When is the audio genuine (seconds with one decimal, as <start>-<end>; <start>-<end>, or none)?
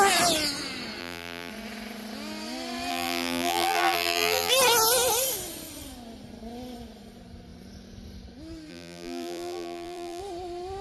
0.0-1.0; 1.5-2.9; 4.5-8.7; 10.2-10.8